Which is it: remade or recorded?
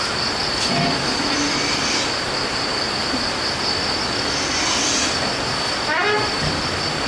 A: recorded